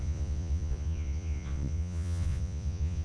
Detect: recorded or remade remade